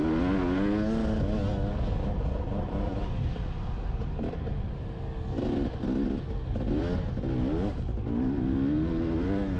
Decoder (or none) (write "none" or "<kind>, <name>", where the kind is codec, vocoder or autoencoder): none